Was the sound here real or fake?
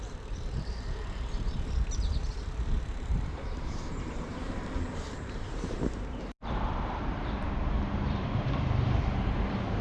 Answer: fake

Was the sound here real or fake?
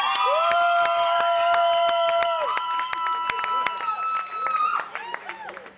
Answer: real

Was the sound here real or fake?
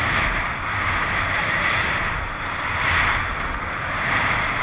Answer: real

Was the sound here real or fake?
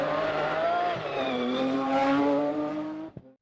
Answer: fake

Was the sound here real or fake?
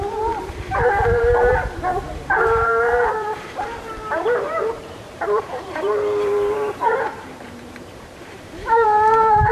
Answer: fake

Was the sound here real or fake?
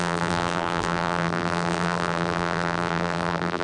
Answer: fake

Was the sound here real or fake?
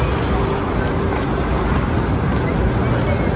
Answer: real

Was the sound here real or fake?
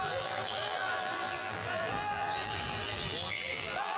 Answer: fake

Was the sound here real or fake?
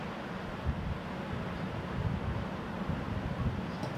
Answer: real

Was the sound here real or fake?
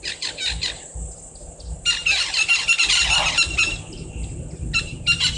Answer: real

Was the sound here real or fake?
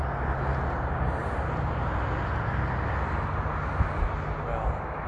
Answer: real